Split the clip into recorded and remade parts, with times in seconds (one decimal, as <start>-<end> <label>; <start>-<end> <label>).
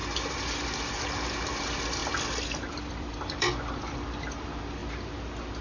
0.0-4.8 remade; 4.8-5.6 recorded